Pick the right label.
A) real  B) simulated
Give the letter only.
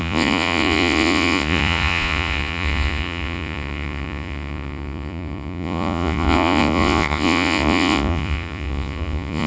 B